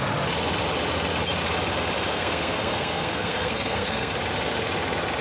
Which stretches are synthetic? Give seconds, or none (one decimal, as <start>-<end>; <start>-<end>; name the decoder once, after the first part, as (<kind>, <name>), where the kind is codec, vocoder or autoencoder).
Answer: 2.1-4.1 (codec, SNAC)